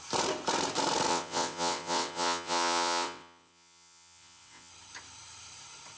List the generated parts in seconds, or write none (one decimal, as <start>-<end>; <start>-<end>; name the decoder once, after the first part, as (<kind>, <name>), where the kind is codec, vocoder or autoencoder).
1.1-4.7 (vocoder, WaveNeXt)